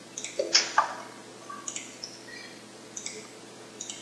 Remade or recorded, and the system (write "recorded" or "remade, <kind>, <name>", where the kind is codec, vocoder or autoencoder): recorded